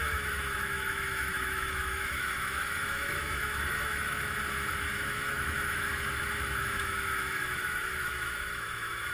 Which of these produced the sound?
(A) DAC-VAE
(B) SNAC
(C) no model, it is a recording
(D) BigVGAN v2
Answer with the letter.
A